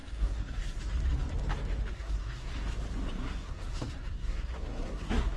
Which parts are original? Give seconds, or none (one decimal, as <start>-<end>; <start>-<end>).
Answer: 0.8-1.9; 2.5-3.2